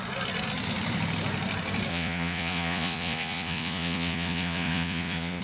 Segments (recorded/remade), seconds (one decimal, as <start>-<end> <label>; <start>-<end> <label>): 0.0-1.9 recorded; 1.9-5.4 remade